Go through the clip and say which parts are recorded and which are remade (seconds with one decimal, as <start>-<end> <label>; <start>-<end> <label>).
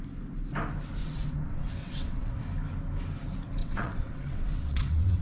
0.0-1.0 recorded; 1.0-2.4 remade; 2.4-3.6 recorded; 3.6-5.2 remade